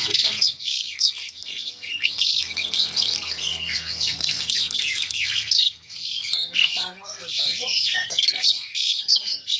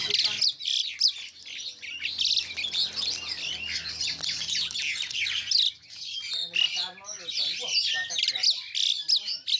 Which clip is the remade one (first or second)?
first